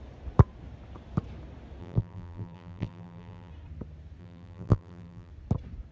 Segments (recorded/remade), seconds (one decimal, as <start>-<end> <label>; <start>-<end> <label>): 0.0-1.8 recorded; 1.8-3.5 remade; 3.5-4.2 recorded; 4.2-5.3 remade; 5.3-5.9 recorded